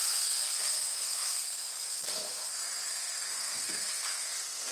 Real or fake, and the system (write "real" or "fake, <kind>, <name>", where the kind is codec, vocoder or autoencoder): fake, codec, SNAC